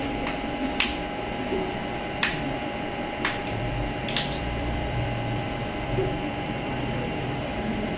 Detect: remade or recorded remade